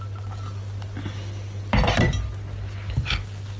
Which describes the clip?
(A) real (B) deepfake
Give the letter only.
A